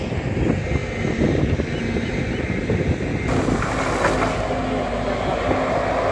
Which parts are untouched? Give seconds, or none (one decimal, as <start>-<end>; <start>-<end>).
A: 0.0-6.1

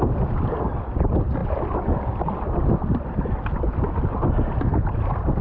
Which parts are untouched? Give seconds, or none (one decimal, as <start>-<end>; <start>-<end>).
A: 0.0-5.4

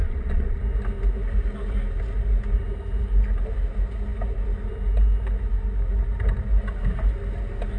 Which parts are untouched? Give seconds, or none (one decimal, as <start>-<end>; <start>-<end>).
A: 0.6-7.8

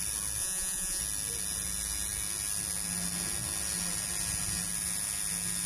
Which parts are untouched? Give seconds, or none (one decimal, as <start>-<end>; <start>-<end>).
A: 0.0-0.4; 1.0-5.7

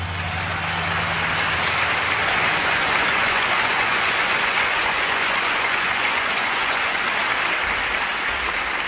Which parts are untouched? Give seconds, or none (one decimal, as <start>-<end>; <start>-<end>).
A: 0.0-2.2; 7.0-8.9

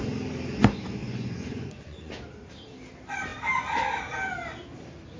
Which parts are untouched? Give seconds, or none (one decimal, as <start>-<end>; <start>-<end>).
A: 0.0-1.0; 2.1-5.2

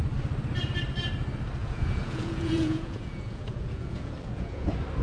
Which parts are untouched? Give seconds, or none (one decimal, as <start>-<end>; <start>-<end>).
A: 0.0-1.6; 4.6-5.0